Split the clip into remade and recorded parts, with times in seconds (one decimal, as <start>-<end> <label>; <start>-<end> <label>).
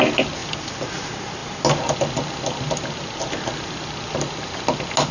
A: 0.0-5.1 recorded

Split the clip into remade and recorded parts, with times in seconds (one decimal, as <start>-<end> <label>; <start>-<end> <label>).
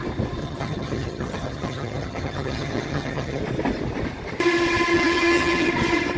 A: 0.0-0.4 recorded; 0.4-3.4 remade; 3.4-4.9 recorded; 4.9-5.7 remade; 5.7-6.2 recorded